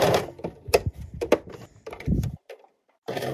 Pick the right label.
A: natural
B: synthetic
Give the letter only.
B